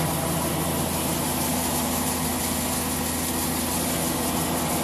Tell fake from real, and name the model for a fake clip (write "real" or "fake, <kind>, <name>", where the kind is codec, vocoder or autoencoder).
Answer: real